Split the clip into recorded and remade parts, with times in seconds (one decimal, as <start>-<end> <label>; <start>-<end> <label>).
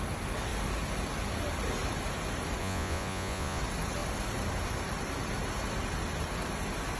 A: 0.0-2.6 recorded; 2.6-3.6 remade; 3.6-7.0 recorded